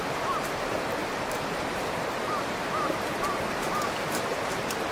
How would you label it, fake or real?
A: fake